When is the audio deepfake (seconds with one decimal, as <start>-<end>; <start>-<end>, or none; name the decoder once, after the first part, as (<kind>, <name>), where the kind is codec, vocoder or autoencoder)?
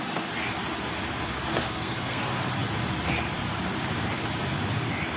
1.5-2.2 (codec, SNAC)